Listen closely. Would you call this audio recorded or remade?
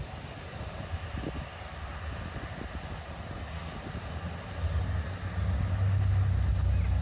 recorded